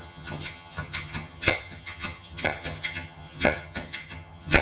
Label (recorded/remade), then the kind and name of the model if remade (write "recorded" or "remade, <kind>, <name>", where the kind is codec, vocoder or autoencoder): remade, vocoder, HiFi-GAN